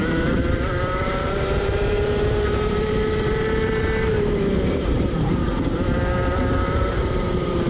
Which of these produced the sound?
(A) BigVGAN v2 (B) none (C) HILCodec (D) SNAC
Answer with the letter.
A